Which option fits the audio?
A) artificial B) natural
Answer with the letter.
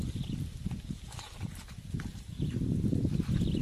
B